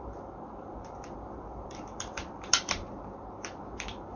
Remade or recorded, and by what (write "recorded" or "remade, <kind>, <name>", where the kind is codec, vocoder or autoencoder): remade, vocoder, BigVGAN v2